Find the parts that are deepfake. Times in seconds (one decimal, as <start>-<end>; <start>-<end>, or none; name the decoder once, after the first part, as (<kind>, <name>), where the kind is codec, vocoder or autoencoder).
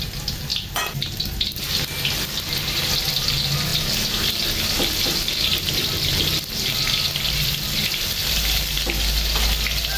0.5-1.6 (vocoder, BigVGAN v2)